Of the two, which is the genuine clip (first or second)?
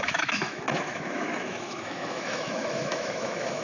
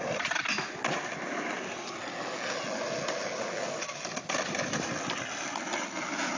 second